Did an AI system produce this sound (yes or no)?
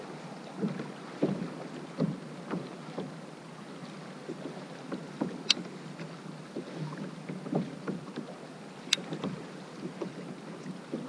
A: no